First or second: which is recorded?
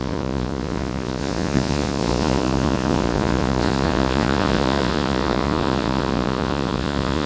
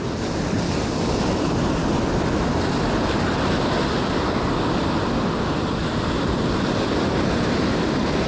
second